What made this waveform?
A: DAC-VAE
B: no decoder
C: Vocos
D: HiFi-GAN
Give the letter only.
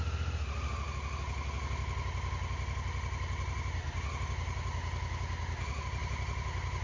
B